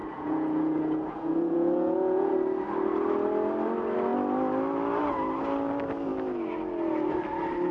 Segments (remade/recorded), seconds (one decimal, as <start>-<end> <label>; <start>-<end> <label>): 0.0-2.3 remade; 2.3-7.7 recorded